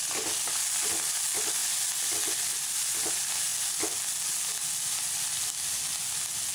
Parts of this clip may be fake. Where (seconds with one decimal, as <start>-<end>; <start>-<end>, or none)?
none